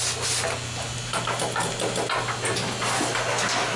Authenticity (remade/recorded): recorded